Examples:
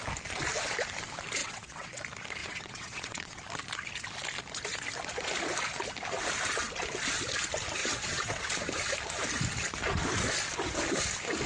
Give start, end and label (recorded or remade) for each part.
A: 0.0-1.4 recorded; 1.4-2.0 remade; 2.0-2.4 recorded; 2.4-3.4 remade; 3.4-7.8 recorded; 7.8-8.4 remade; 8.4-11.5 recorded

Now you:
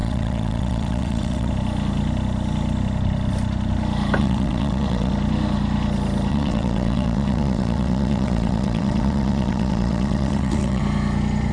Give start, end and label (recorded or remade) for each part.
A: 0.0-1.5 remade; 1.5-4.2 recorded; 4.2-5.1 remade; 5.1-6.3 recorded; 6.3-10.8 remade; 10.8-11.5 recorded

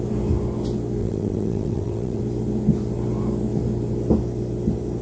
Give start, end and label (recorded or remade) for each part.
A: 0.0-1.0 recorded; 1.0-2.2 remade; 2.2-5.0 recorded

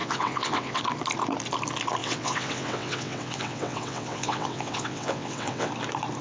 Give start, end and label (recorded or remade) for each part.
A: 0.0-0.8 remade; 0.8-2.0 recorded; 2.0-5.7 remade; 5.7-6.2 recorded

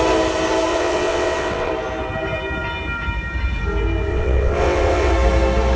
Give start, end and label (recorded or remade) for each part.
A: 0.0-0.7 recorded; 0.7-1.7 remade; 1.7-4.1 recorded; 4.1-5.1 remade; 5.1-5.8 recorded

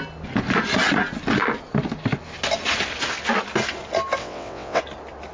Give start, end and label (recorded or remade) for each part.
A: 0.0-4.2 recorded; 4.2-4.8 remade; 4.8-5.3 recorded

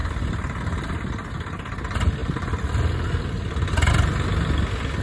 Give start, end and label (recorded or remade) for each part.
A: 0.0-5.0 recorded